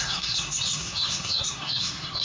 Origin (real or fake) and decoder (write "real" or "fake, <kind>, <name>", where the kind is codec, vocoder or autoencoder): fake, codec, SNAC